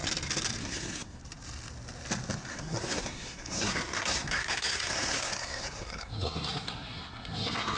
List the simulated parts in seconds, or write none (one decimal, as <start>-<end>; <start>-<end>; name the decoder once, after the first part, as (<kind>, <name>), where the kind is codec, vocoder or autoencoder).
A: 0.6-1.2 (codec, SNAC); 2.5-7.8